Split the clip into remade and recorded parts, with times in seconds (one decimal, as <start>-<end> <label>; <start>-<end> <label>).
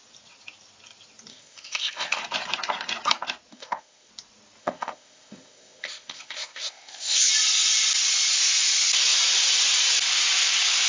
0.0-1.3 recorded; 1.3-2.2 remade; 2.2-3.5 recorded; 3.5-4.1 remade; 4.1-4.6 recorded; 4.6-7.3 remade; 7.3-10.9 recorded